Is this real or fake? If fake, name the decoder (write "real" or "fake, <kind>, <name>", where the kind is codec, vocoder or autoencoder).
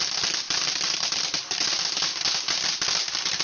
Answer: real